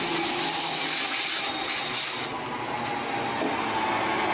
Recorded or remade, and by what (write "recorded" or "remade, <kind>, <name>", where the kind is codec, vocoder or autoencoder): recorded